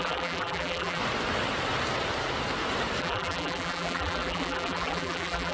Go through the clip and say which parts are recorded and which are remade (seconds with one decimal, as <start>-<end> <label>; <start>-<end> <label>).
0.0-1.0 remade; 1.0-3.0 recorded; 3.0-5.5 remade